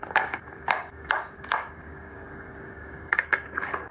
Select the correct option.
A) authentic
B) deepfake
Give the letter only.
B